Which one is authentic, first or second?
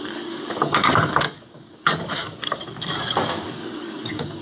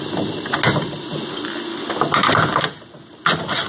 second